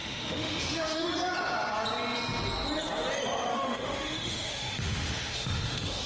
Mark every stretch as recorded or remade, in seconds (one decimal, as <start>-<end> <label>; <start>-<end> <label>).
0.0-1.1 remade; 1.1-3.5 recorded; 3.5-6.1 remade